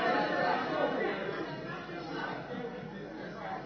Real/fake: real